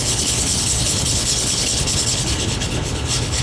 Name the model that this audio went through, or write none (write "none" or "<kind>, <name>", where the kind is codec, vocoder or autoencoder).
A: codec, HILCodec